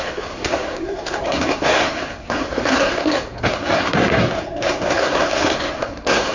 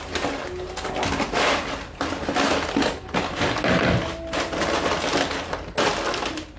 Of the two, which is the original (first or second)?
second